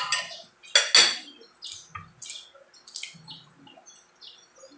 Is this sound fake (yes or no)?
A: no